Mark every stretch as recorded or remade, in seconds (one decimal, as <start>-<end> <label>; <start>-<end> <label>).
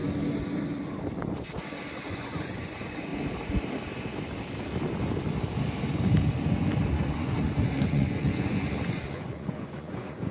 0.0-2.1 recorded; 2.1-3.1 remade; 3.1-6.9 recorded; 6.9-10.3 remade